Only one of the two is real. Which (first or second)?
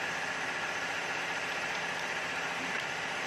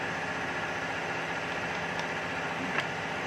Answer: second